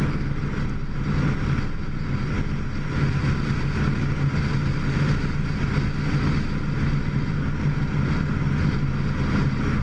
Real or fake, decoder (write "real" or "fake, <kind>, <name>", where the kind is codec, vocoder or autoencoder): real